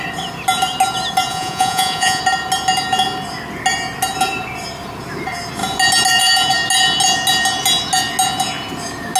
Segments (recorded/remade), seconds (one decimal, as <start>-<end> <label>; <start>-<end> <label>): 0.0-1.3 recorded; 1.3-2.2 remade; 2.2-9.2 recorded